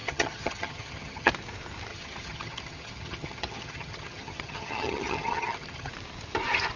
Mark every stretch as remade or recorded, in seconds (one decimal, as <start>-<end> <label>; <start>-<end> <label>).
0.0-1.3 remade; 1.3-1.9 recorded; 1.9-5.9 remade; 5.9-6.8 recorded